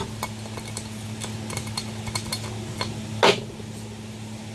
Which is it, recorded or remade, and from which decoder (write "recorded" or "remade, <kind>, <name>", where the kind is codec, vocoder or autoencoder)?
recorded